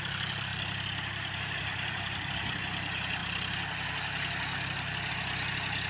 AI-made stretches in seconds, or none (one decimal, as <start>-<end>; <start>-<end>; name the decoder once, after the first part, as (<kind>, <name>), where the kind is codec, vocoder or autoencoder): none